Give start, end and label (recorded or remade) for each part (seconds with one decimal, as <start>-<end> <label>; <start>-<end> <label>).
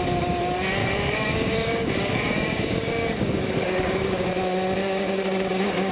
0.0-0.8 recorded; 0.8-4.3 remade; 4.3-4.8 recorded; 4.8-5.9 remade